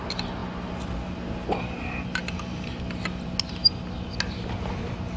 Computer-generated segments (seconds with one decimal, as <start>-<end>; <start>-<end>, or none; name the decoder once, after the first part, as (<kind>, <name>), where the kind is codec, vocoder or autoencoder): none